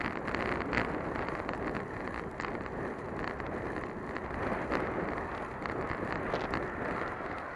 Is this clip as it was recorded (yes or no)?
yes